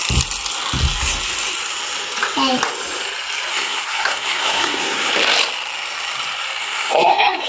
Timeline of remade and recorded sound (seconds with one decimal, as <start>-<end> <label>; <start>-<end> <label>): 0.0-3.5 recorded; 3.5-5.1 remade; 5.1-6.6 recorded; 6.6-7.5 remade